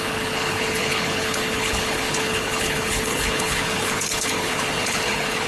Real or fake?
fake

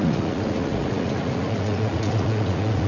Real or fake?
fake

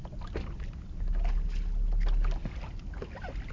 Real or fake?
real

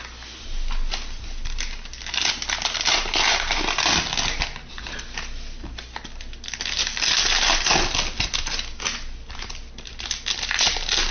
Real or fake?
real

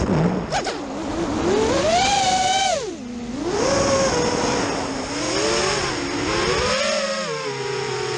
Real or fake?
real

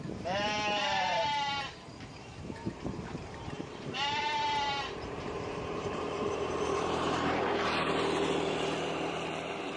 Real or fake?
fake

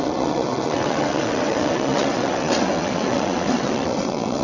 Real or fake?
fake